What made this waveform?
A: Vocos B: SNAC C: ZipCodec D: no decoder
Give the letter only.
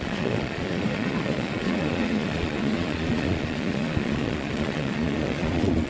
A